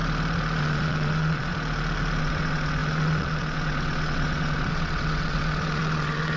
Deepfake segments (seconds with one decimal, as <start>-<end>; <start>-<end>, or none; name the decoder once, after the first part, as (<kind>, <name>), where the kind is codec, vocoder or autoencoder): 0.6-1.5 (vocoder, WaveNeXt); 2.2-6.4